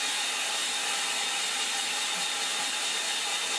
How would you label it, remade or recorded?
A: recorded